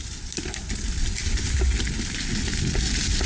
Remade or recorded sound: recorded